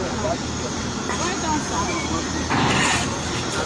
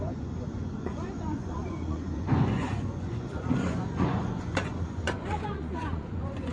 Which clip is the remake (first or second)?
second